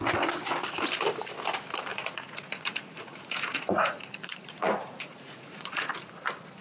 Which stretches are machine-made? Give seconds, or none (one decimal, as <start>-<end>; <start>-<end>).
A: 1.9-5.9